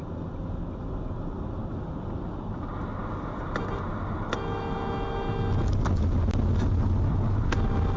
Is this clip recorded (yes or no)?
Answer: yes